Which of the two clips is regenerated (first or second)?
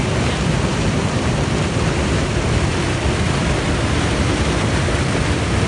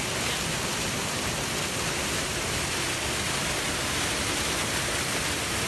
first